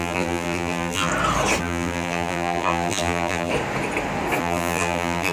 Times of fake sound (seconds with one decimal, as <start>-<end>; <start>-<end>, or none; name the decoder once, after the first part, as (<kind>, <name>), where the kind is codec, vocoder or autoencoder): 0.0-1.1 (vocoder, BigVGAN v2); 1.6-3.5; 4.4-5.3